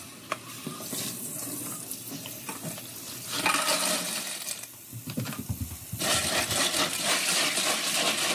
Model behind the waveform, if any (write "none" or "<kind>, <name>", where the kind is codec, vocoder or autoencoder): none